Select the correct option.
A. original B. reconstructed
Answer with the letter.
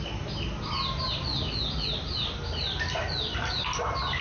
A